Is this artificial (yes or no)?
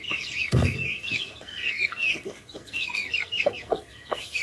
yes